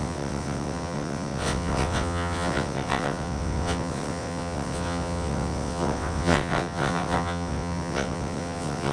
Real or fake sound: fake